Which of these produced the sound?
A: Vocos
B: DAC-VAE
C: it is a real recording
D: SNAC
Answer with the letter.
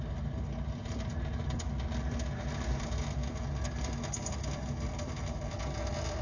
C